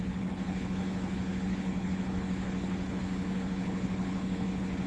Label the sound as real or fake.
fake